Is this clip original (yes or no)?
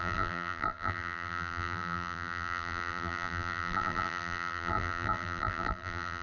no